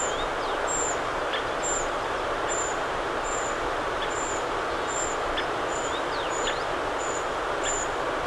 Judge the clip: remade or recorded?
recorded